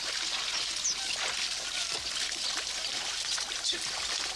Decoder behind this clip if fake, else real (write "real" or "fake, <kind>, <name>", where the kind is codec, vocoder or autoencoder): real